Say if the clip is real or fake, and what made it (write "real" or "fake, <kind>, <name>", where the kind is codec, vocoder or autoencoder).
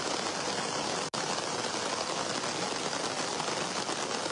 real